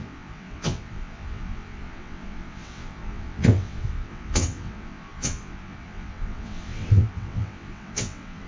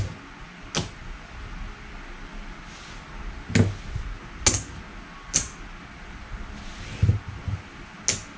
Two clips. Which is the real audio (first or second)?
second